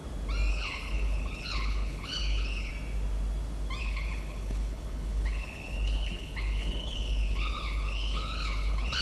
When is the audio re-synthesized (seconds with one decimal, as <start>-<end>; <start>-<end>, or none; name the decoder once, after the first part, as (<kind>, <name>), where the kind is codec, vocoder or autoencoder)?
0.5-2.7 (codec, HILCodec); 3.8-9.0